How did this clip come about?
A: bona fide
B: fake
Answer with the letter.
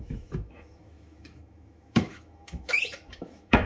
B